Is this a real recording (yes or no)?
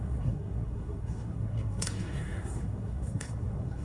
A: no